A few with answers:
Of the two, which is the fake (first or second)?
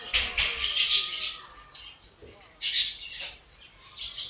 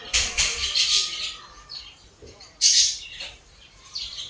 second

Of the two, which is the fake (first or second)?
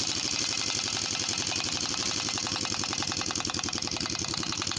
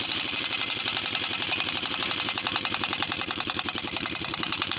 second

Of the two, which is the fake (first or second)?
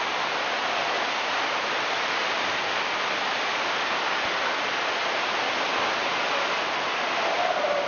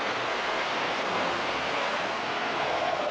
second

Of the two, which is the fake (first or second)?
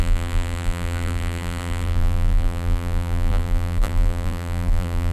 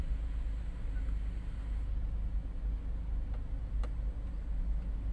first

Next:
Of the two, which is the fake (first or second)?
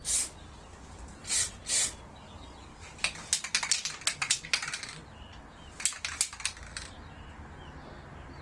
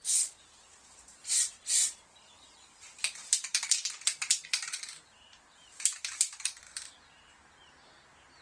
second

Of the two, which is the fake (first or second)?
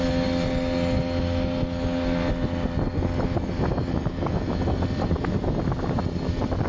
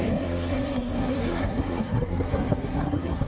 second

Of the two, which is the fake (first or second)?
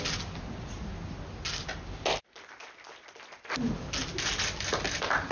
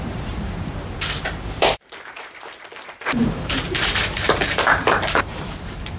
second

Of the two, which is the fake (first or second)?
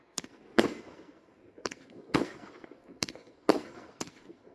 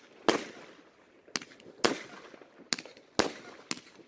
first